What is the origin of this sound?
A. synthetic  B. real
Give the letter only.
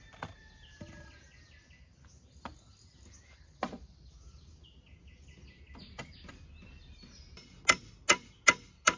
B